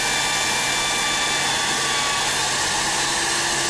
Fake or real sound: real